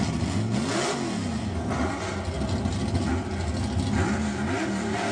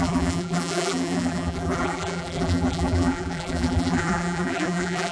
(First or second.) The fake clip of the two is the second